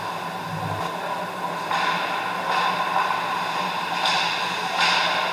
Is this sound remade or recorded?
recorded